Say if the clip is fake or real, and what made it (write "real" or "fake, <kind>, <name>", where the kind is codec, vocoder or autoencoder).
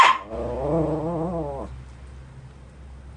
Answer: real